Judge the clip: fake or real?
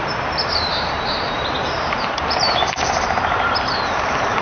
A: fake